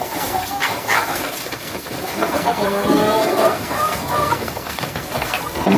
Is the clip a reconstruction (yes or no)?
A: yes